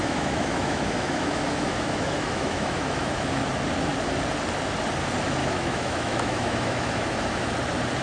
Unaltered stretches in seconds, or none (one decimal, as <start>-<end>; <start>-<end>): 3.4-5.4; 7.4-8.0